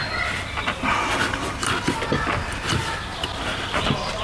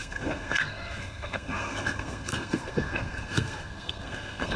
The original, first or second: first